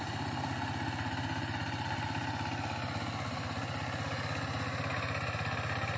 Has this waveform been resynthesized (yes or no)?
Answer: no